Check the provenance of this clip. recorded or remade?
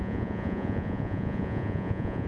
remade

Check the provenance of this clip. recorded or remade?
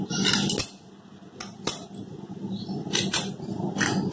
recorded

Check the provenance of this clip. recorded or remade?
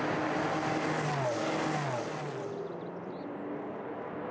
recorded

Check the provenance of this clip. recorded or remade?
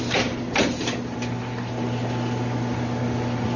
recorded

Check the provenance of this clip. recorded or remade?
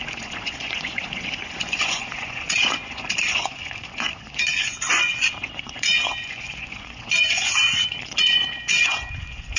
remade